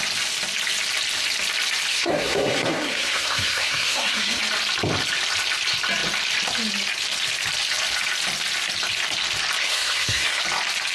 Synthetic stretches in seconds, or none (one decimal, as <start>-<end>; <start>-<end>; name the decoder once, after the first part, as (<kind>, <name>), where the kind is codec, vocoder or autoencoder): 1.9-4.4 (codec, SNAC); 9.6-10.4

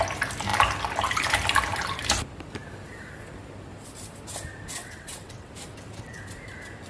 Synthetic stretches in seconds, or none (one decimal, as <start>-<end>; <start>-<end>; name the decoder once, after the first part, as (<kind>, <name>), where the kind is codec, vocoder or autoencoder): 4.8-5.5 (vocoder, WaveNeXt)

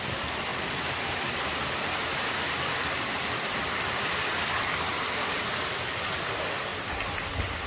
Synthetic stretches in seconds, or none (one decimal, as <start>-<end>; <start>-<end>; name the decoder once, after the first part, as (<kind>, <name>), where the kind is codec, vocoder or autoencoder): none

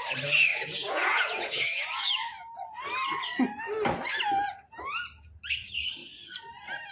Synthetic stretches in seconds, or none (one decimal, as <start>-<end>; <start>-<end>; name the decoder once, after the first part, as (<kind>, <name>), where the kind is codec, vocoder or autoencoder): 0.5-2.1 (vocoder, Vocos)

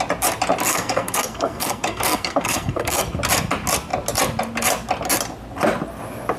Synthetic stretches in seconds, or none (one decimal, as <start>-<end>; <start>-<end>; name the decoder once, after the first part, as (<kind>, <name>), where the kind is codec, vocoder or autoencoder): 0.7-3.2 (codec, SNAC)

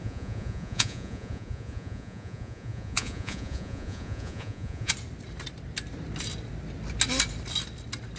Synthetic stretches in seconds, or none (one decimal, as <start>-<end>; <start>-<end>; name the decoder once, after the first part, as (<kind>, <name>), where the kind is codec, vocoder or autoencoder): 0.0-4.9 (vocoder, Vocos)

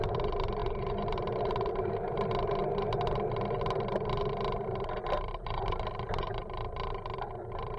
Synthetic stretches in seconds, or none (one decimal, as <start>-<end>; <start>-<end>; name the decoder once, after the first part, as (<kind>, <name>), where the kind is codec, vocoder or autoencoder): none

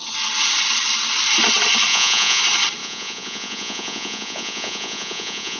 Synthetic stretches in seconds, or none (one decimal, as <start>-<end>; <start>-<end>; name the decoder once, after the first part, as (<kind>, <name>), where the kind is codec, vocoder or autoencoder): 1.9-2.4 (vocoder, Vocos); 2.8-5.6